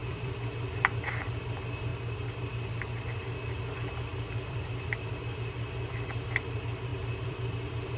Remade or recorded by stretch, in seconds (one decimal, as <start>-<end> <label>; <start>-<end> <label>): 0.0-1.0 remade; 1.0-1.9 recorded; 1.9-2.5 remade; 2.5-4.1 recorded; 4.1-5.1 remade; 5.1-6.9 recorded; 6.9-7.5 remade; 7.5-8.0 recorded